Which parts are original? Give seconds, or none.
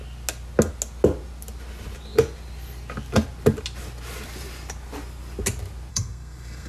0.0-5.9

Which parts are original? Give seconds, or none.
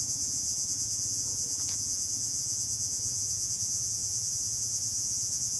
none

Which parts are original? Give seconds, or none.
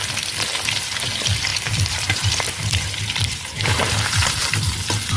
0.0-1.5; 2.2-3.2; 3.8-5.2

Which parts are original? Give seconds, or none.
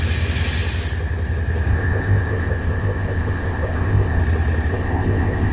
0.0-1.7; 4.2-4.7